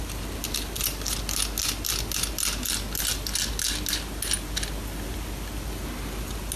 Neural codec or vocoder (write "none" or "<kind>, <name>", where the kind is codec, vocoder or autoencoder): none